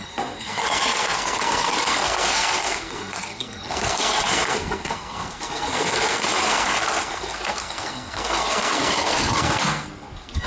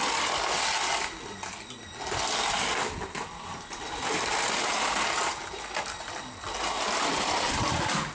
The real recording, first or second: second